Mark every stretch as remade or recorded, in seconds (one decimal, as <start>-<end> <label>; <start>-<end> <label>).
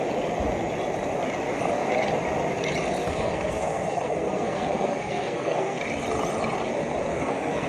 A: 0.0-3.0 recorded; 3.0-5.8 remade; 5.8-7.1 recorded; 7.1-7.7 remade